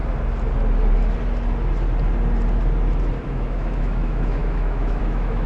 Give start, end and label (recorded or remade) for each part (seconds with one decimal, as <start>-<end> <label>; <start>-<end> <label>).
0.0-3.3 recorded; 3.3-5.5 remade